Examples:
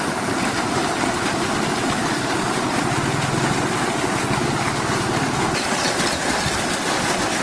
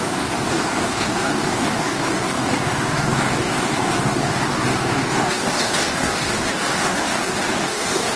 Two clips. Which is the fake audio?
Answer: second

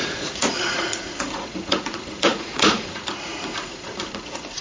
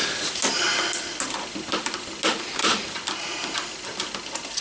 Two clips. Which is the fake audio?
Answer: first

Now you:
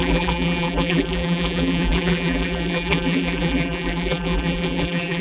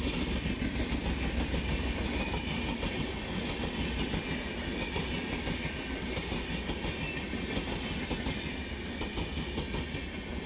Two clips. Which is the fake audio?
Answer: first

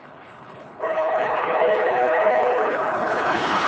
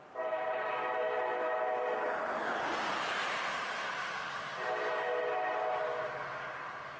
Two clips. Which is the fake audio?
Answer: first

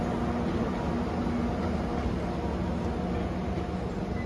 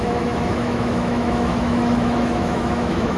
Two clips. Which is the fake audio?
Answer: second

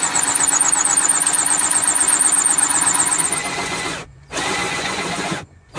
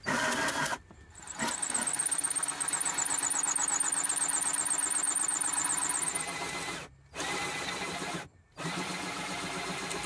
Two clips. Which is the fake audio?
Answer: first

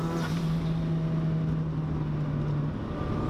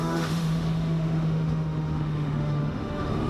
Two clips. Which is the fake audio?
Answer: second